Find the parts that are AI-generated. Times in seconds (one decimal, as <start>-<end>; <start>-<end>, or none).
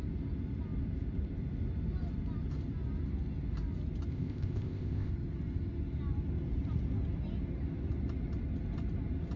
4.1-5.1